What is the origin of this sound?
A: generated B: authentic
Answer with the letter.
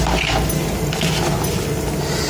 B